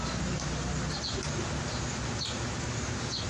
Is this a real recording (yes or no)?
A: yes